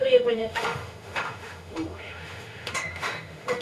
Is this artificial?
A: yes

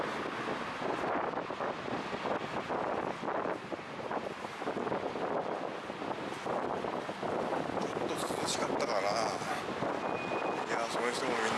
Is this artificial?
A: no